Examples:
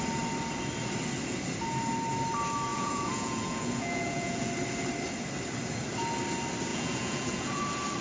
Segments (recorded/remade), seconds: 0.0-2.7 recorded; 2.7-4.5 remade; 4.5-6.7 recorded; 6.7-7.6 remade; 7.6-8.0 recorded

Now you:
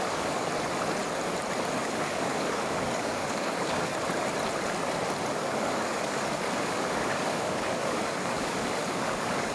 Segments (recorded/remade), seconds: 0.0-0.5 remade; 0.5-1.8 recorded; 1.8-3.9 remade; 3.9-5.3 recorded; 5.3-9.5 remade

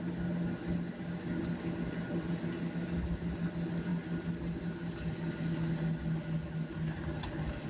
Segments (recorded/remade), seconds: 0.0-7.7 recorded